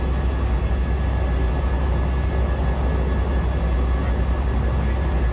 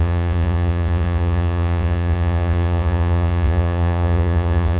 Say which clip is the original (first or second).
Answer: first